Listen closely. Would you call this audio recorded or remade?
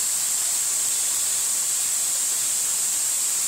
remade